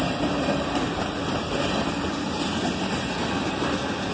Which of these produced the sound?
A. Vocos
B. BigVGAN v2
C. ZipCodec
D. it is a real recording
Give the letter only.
D